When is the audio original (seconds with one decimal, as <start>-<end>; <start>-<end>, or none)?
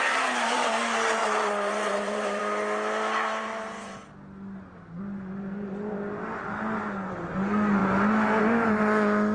0.0-1.2; 2.4-9.3